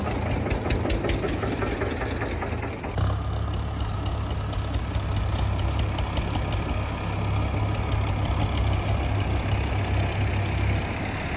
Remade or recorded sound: recorded